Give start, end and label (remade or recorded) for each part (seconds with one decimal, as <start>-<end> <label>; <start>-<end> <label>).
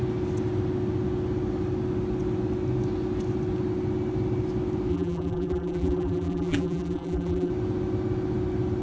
0.0-4.9 recorded; 4.9-7.5 remade; 7.5-8.8 recorded